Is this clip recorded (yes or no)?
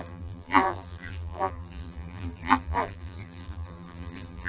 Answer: no